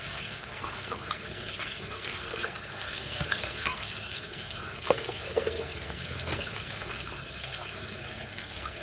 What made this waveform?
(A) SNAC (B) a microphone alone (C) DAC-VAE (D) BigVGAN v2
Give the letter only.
A